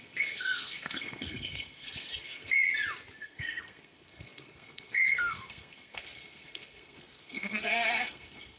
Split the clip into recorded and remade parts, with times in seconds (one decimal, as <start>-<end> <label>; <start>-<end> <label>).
0.0-2.6 remade; 2.6-3.2 recorded; 3.2-8.6 remade